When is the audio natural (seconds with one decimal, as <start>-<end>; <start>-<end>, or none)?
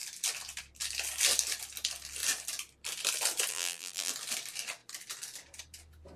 0.0-3.5; 4.1-6.2